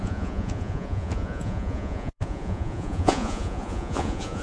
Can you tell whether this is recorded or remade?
remade